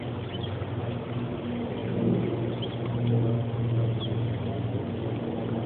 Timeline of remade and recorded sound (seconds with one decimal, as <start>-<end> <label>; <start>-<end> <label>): 0.0-5.7 recorded